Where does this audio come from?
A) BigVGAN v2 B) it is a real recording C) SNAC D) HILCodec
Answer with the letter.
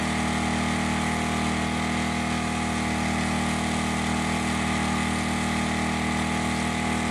B